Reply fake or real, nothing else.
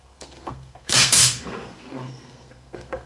fake